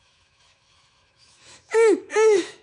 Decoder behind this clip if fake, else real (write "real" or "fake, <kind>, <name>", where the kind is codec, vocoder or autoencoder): fake, autoencoder, DAC-VAE